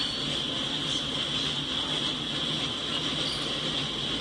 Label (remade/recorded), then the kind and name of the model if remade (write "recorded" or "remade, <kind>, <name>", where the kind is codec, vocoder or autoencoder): recorded